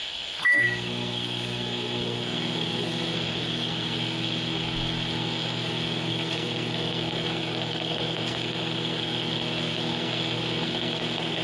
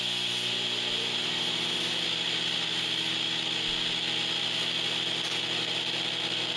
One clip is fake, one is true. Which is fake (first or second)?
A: first